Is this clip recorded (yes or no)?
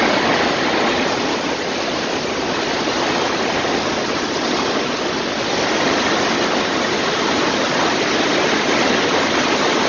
yes